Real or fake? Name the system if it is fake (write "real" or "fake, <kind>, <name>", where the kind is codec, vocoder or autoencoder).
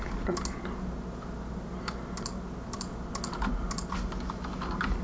real